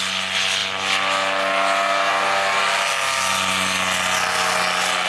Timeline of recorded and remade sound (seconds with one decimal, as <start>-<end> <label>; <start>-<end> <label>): 0.0-5.1 recorded